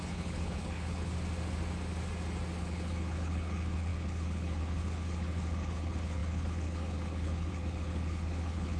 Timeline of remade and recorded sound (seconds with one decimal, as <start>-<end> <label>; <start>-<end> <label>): 0.0-1.1 remade; 1.1-2.6 recorded; 2.6-8.8 remade